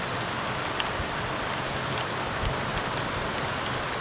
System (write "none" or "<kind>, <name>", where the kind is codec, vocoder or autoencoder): none